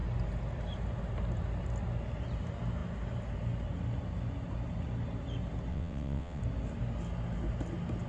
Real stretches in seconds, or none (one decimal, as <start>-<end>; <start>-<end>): 0.0-5.7; 6.4-8.1